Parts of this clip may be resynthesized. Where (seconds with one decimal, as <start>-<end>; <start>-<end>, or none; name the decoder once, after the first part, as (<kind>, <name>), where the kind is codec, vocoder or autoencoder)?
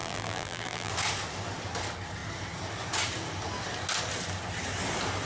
0.0-0.9 (vocoder, BigVGAN v2)